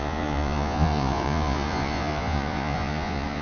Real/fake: fake